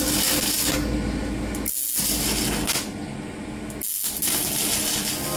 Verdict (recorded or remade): recorded